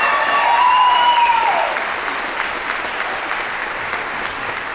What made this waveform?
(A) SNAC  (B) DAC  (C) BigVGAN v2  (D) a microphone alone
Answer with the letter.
D